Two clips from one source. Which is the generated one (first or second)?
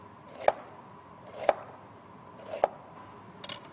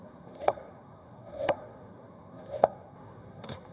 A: second